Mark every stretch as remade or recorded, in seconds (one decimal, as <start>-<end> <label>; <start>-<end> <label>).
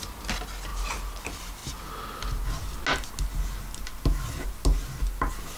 0.0-5.6 recorded